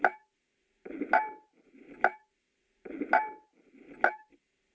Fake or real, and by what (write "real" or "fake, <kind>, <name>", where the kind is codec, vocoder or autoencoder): real